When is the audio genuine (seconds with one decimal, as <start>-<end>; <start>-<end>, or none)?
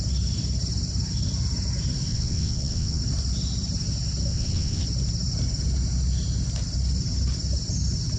0.0-2.1; 3.0-4.3; 4.8-8.2